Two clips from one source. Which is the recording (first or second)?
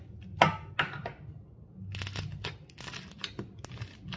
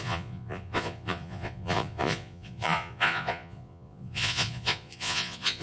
first